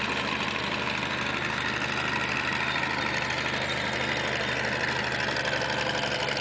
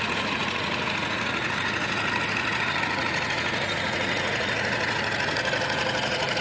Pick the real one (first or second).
first